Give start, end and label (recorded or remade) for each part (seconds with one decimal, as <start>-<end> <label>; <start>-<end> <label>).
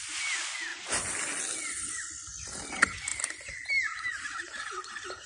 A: 0.0-5.3 recorded